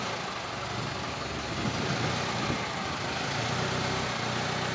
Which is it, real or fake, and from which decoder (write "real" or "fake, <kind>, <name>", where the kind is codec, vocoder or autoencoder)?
real